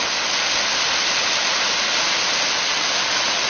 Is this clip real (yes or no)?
yes